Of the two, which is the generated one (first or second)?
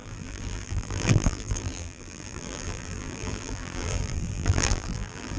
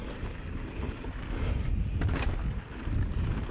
first